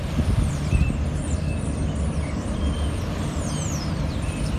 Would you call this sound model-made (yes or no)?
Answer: yes